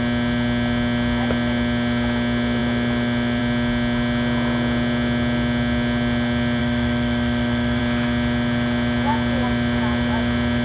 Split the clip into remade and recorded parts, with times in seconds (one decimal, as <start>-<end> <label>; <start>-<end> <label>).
0.0-6.6 recorded; 6.6-7.8 remade; 7.8-10.6 recorded